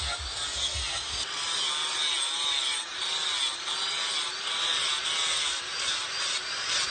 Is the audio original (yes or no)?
yes